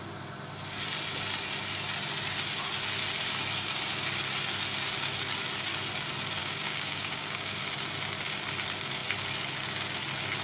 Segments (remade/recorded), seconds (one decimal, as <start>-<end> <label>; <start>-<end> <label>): 0.0-6.4 recorded; 6.4-7.6 remade; 7.6-10.4 recorded